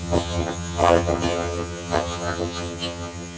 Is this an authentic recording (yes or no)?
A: no